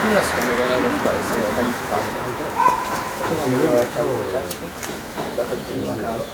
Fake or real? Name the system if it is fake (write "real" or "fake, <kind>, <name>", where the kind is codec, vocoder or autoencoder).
fake, autoencoder, DAC-VAE